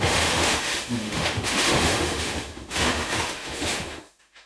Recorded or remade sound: remade